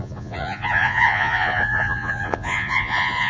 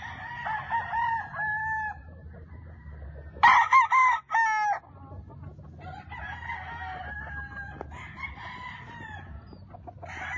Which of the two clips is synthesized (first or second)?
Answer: first